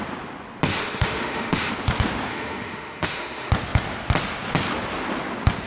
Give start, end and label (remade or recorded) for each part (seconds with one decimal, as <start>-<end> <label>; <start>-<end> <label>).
0.0-0.7 recorded; 0.7-1.7 remade; 1.7-2.3 recorded; 2.3-3.5 remade; 3.5-5.7 recorded